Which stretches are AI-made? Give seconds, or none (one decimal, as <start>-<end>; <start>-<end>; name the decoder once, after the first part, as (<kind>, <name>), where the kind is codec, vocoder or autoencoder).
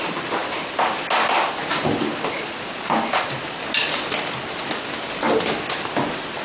none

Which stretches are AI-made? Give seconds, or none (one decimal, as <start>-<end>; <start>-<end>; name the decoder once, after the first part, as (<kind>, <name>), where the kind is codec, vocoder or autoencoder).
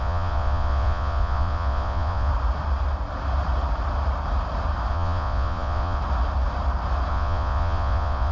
0.0-2.3 (vocoder, Vocos); 4.9-6.0; 7.1-8.3